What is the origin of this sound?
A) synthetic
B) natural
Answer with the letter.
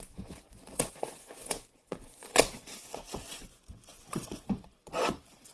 A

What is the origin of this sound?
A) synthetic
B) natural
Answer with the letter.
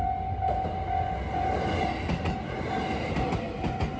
B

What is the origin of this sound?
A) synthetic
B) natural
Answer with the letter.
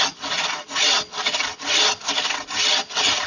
B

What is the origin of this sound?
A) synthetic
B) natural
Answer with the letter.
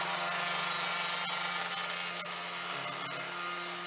B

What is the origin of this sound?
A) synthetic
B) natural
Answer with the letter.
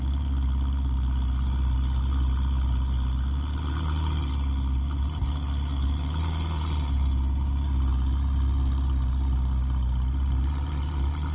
B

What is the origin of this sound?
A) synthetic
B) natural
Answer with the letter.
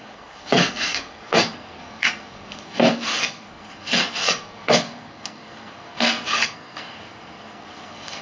A